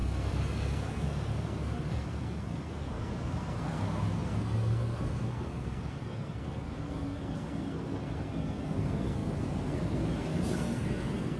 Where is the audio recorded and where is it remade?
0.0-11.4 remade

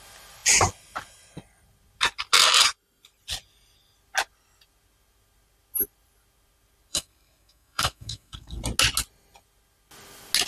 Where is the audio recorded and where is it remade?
0.0-6.9 recorded; 6.9-8.6 remade; 8.6-10.5 recorded

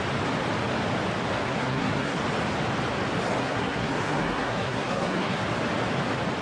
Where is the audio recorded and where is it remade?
0.0-1.4 recorded; 1.4-2.2 remade; 2.2-3.4 recorded; 3.4-5.4 remade; 5.4-6.4 recorded

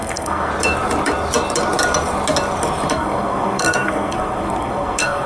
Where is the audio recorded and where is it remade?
0.0-0.5 remade; 0.5-2.9 recorded; 2.9-5.3 remade

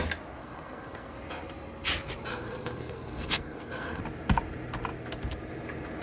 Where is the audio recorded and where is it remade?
0.0-0.4 recorded; 0.4-1.2 remade; 1.2-2.3 recorded; 2.3-4.0 remade; 4.0-6.0 recorded

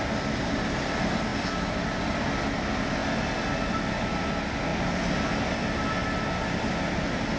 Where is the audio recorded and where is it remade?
0.0-7.4 recorded

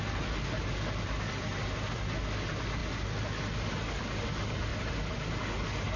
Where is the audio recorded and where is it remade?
0.0-6.0 recorded

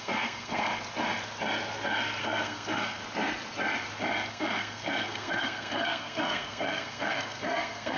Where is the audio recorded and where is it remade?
0.0-0.7 remade; 0.7-2.2 recorded; 2.2-3.0 remade; 3.0-4.3 recorded; 4.3-8.0 remade